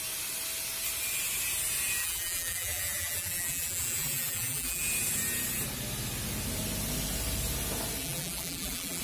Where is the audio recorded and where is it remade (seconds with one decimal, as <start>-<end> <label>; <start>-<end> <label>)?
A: 0.0-2.0 recorded; 2.0-4.8 remade; 4.8-8.0 recorded; 8.0-9.0 remade